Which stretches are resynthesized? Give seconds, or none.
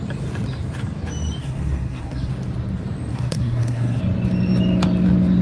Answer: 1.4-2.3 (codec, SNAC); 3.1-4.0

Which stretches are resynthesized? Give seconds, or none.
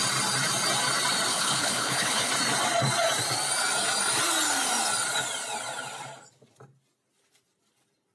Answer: 1.3-2.3 (codec, HILCodec)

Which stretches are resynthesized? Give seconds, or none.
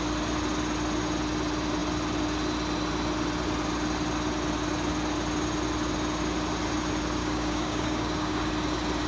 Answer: 7.2-8.5 (codec, DAC)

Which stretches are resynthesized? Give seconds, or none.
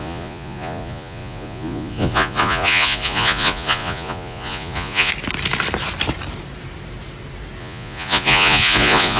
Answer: 0.0-5.1 (vocoder, Vocos); 7.6-9.2